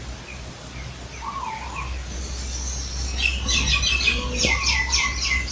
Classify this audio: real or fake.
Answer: real